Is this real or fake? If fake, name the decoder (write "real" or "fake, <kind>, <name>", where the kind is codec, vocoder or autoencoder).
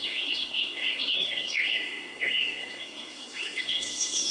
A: fake, codec, SNAC